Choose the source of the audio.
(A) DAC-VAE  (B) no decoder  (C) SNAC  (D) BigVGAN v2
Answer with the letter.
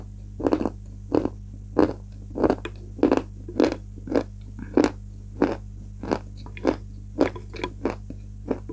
B